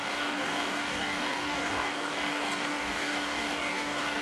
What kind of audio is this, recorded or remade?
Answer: remade